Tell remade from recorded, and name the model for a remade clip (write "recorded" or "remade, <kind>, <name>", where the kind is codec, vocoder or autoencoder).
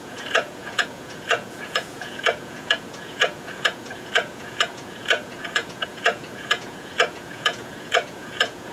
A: remade, vocoder, Vocos